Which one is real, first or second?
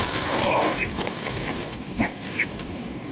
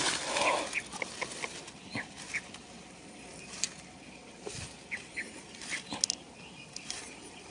second